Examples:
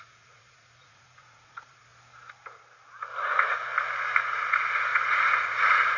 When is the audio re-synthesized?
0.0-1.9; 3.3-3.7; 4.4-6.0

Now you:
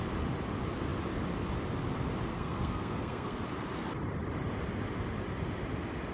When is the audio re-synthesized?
2.3-3.4